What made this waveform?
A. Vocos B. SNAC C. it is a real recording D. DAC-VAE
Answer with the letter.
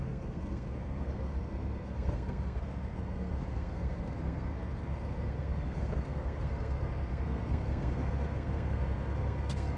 B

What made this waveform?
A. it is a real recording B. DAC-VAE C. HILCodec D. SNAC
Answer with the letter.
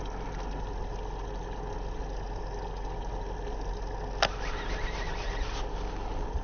A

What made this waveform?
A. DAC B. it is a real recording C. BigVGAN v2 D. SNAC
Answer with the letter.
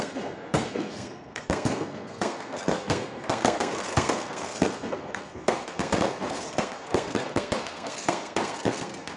D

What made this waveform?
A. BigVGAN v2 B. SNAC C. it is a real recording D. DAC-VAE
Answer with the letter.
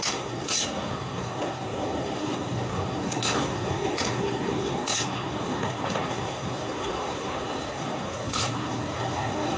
B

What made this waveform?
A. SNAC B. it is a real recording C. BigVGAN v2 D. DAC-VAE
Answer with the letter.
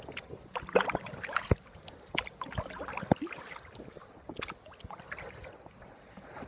B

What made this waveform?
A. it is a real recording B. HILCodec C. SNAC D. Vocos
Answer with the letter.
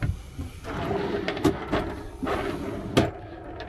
A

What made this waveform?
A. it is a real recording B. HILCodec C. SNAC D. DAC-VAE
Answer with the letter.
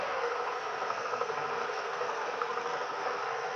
C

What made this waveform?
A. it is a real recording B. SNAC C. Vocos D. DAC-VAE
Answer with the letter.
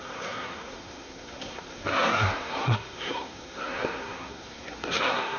B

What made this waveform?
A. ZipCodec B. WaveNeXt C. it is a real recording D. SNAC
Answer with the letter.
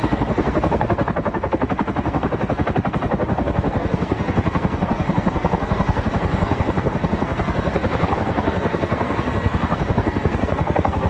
D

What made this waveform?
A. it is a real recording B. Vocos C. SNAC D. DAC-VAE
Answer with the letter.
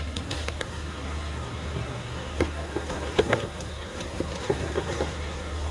C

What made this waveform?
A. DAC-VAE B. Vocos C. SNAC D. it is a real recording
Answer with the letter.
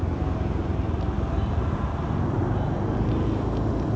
D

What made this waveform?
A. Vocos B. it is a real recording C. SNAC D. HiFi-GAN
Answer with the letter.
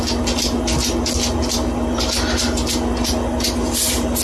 B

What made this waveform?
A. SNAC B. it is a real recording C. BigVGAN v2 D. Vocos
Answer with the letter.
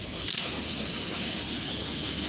A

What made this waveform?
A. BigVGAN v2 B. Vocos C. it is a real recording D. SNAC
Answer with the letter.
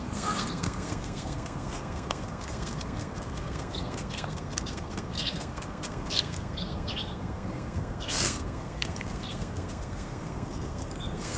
D